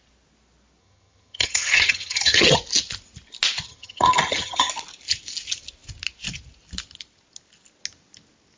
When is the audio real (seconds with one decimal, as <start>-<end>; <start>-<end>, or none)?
0.0-0.8; 2.6-3.7; 4.7-8.6